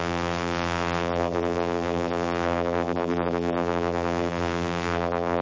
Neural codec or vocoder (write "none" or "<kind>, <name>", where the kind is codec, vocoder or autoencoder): vocoder, BigVGAN v2